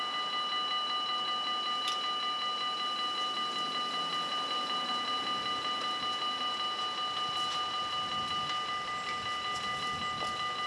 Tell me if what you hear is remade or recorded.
recorded